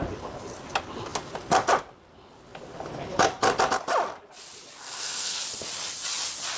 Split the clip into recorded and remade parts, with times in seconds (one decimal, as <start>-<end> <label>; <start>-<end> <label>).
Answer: 0.0-4.8 recorded; 4.8-5.4 remade; 5.4-6.6 recorded